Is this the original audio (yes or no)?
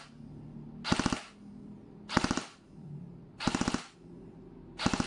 yes